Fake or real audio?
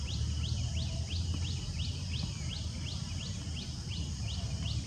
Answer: real